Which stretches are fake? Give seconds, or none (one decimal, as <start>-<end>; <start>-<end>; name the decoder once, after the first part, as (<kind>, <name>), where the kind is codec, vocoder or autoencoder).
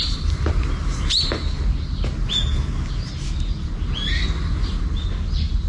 0.8-1.6 (vocoder, BigVGAN v2)